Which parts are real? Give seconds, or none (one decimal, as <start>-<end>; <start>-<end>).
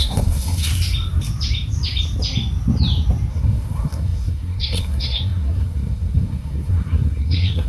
0.7-3.3